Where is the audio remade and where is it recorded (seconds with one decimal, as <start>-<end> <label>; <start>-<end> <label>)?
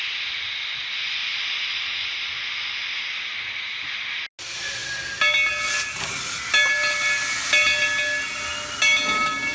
0.0-9.5 recorded